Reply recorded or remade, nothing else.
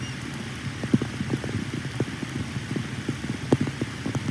recorded